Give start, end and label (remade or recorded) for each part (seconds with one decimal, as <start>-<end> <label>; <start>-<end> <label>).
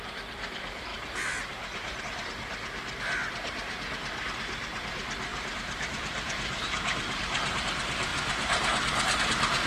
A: 0.0-5.3 recorded; 5.3-7.6 remade; 7.6-9.7 recorded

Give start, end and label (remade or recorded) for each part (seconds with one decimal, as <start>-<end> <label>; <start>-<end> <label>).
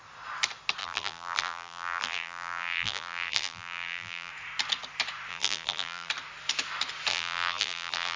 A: 0.0-0.8 recorded; 0.8-4.3 remade; 4.3-5.3 recorded; 5.3-6.1 remade; 6.1-7.1 recorded; 7.1-8.2 remade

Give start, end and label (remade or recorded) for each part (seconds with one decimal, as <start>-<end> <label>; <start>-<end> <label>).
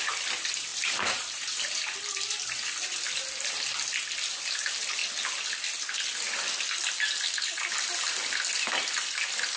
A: 0.0-0.7 recorded; 0.7-1.8 remade; 1.8-9.6 recorded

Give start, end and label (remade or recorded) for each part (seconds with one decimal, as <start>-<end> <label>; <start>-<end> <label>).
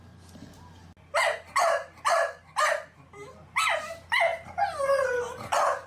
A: 0.0-4.3 recorded; 4.3-5.2 remade; 5.2-5.9 recorded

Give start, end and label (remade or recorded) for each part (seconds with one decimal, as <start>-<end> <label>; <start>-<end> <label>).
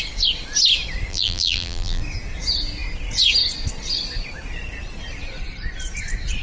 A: 0.0-1.1 recorded; 1.1-2.0 remade; 2.0-6.4 recorded